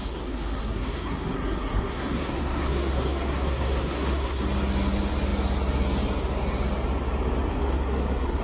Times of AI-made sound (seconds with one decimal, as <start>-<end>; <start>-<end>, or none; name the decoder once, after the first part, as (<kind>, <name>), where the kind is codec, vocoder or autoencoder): 0.0-4.4 (codec, SNAC); 7.5-8.4